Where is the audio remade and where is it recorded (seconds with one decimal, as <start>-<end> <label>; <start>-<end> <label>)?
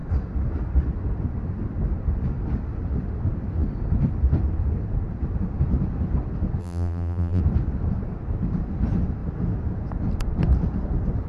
0.0-6.6 recorded; 6.6-7.4 remade; 7.4-11.3 recorded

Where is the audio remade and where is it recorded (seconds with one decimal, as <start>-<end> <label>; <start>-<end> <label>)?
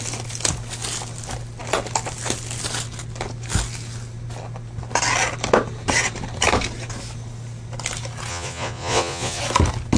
0.0-8.3 recorded; 8.3-9.4 remade; 9.4-10.0 recorded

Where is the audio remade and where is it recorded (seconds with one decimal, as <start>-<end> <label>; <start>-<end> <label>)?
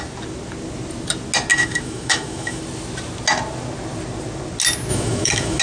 0.0-1.5 recorded; 1.5-2.6 remade; 2.6-4.9 recorded; 4.9-5.6 remade